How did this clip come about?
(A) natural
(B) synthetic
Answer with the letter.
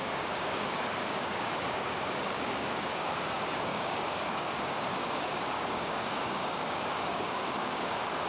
B